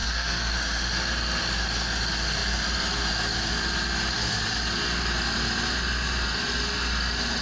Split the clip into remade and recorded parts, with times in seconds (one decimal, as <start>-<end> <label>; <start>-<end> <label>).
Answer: 0.0-0.5 remade; 0.5-7.4 recorded

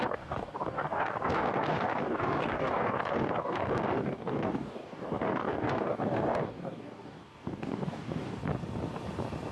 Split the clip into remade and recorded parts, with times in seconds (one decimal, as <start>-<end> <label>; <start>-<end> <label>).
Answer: 0.0-8.4 remade; 8.4-9.5 recorded

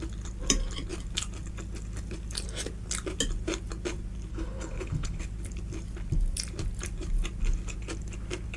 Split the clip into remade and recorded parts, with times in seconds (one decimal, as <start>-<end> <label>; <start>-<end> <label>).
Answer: 0.0-4.3 recorded; 4.3-5.2 remade; 5.2-8.6 recorded

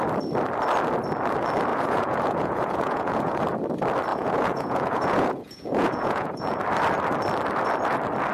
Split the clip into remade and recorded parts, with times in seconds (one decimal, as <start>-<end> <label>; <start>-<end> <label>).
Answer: 0.0-1.7 recorded; 1.7-3.4 remade; 3.4-4.1 recorded; 4.1-6.6 remade; 6.6-8.3 recorded